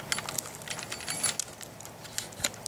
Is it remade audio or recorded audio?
recorded